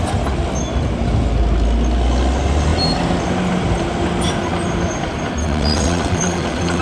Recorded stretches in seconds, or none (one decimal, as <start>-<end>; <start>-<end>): 0.0-5.4